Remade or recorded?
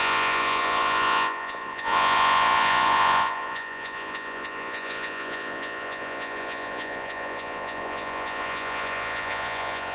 remade